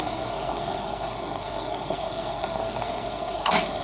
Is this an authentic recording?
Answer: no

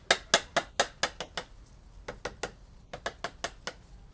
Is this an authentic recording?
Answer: yes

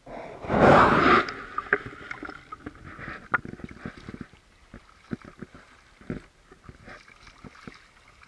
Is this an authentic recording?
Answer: yes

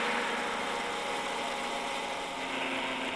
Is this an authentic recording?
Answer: yes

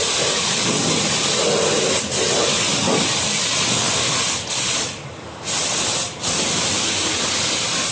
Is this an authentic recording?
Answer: yes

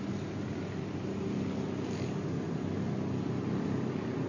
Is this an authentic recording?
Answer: yes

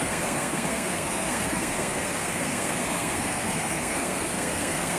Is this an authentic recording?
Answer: no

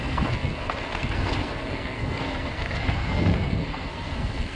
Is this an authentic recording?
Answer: no